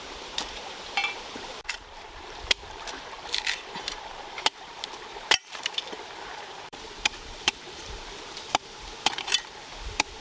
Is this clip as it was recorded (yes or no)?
no